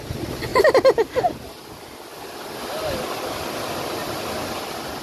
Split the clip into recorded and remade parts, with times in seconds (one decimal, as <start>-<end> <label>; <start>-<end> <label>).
0.0-5.0 recorded